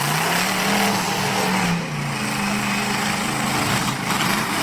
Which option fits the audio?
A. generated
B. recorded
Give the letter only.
B